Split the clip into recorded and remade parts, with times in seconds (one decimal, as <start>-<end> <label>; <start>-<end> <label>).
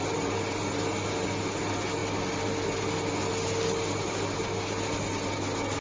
0.0-5.8 recorded